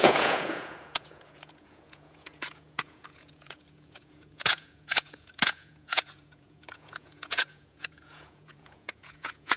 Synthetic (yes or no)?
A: yes